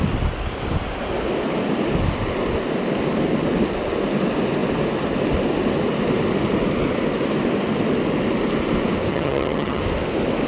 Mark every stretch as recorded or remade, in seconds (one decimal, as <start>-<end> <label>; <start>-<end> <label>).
0.0-9.1 recorded; 9.1-9.8 remade; 9.8-10.5 recorded